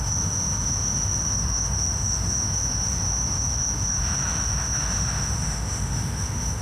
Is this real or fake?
fake